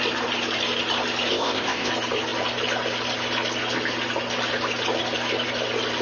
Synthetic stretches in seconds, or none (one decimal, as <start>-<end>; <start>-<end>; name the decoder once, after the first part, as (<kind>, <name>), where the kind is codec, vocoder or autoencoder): 1.3-1.9 (codec, ZipCodec)